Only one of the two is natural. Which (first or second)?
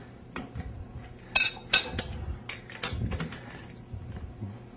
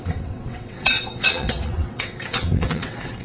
first